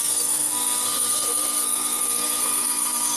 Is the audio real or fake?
fake